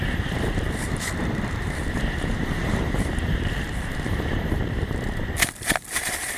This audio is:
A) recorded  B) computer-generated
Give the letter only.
B